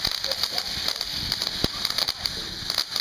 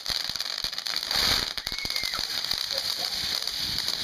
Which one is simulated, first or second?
second